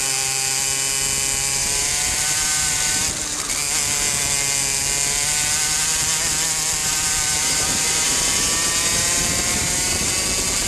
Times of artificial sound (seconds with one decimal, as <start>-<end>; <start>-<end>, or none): 1.6-3.0; 6.8-10.1